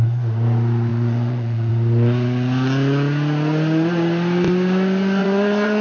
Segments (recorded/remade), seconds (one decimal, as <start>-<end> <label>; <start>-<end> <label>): 0.0-0.9 recorded; 0.9-1.7 remade; 1.7-5.2 recorded; 5.2-5.8 remade